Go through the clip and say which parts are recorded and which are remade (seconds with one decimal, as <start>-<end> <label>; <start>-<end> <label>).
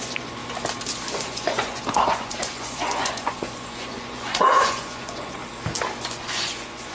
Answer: 0.0-0.4 remade; 0.4-1.1 recorded; 1.1-5.4 remade; 5.4-6.0 recorded; 6.0-6.9 remade